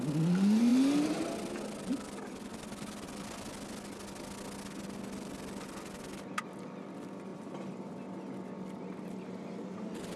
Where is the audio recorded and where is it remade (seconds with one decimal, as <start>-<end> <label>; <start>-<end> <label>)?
0.0-7.3 recorded; 7.3-7.9 remade; 7.9-10.2 recorded